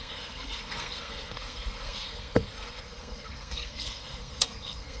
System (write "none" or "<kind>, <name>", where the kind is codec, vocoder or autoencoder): codec, SNAC